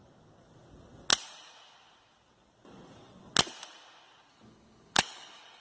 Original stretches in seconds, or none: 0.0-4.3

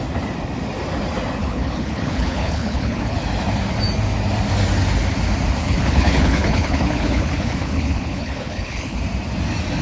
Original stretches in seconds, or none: 0.0-1.4; 3.2-5.6; 9.0-9.8